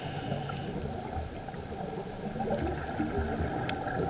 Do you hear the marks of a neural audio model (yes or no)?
no